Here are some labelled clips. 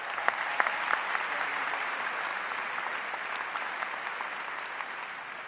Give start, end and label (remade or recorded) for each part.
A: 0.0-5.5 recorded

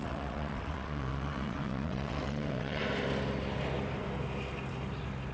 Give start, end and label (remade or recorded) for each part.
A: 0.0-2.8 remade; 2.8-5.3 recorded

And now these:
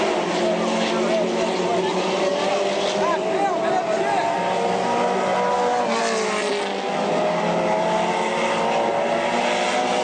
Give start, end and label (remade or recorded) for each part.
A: 0.0-10.0 recorded

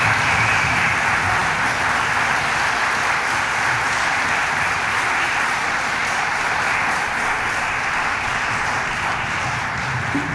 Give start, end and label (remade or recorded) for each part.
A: 0.0-10.3 recorded

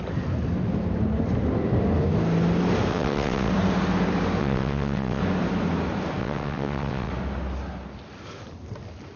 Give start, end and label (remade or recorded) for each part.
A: 0.0-2.9 recorded; 2.9-3.5 remade; 3.5-4.4 recorded; 4.4-5.2 remade; 5.2-6.2 recorded; 6.2-7.1 remade; 7.1-9.2 recorded